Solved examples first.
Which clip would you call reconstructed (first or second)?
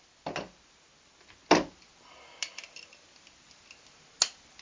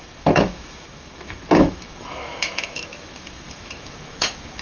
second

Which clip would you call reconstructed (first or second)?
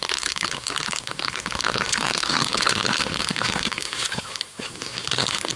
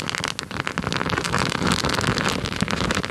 first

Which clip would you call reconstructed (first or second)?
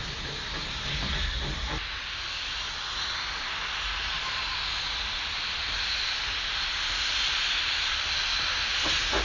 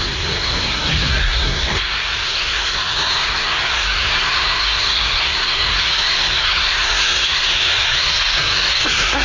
second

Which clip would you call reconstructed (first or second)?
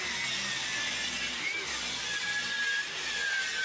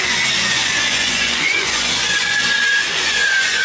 second